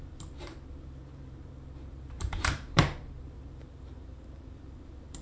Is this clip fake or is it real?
fake